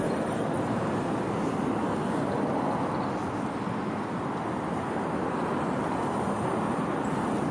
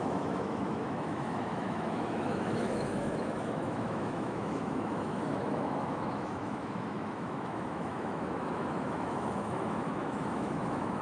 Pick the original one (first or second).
first